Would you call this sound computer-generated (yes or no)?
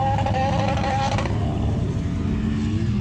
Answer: no